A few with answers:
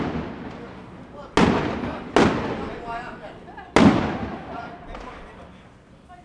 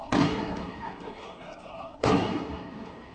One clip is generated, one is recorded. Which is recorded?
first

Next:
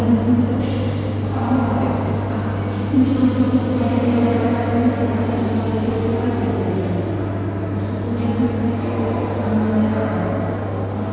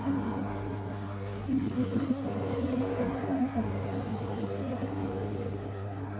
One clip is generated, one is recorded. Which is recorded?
first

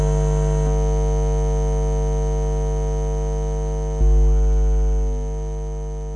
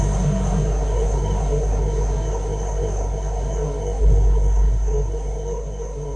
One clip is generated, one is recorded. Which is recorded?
first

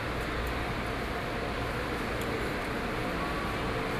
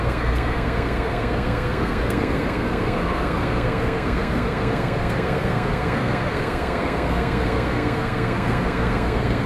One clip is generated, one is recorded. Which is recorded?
first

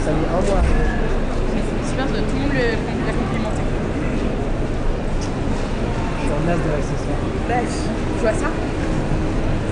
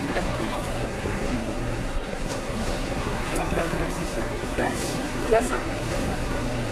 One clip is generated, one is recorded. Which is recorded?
first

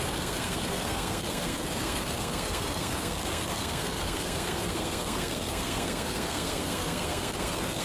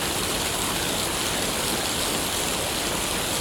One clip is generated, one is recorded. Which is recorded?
second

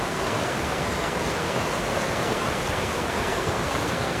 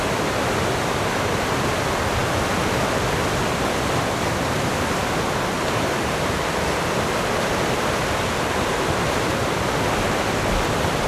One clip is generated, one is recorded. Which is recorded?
second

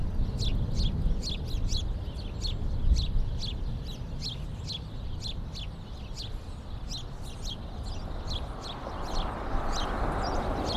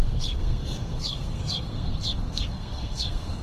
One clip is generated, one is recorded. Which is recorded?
first